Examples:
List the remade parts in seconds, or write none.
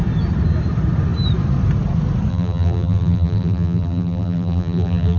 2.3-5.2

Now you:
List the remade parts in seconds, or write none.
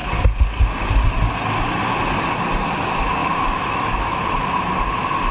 3.2-4.2